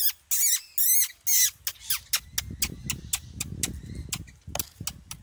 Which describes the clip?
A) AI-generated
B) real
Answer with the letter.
B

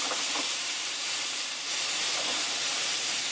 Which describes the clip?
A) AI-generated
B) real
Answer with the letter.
A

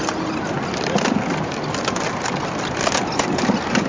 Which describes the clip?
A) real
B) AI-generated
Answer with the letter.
A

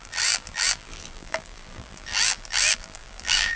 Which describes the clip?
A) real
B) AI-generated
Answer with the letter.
B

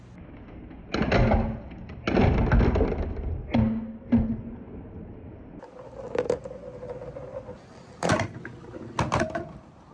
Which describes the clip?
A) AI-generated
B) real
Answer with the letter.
B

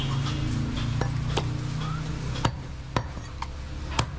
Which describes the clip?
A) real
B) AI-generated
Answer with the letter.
A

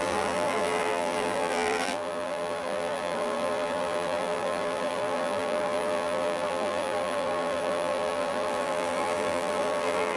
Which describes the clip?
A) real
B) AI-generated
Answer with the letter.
B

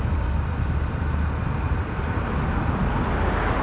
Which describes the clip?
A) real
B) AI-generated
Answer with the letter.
B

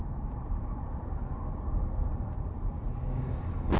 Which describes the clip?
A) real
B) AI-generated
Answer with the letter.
A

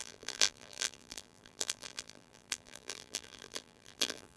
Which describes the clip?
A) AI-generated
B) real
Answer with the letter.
A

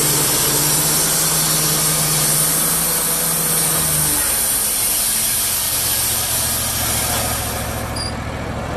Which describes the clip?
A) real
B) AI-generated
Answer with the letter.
A